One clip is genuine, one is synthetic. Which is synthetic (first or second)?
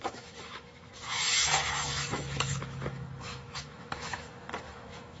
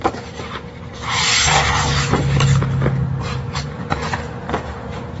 first